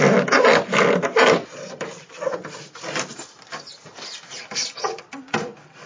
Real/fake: real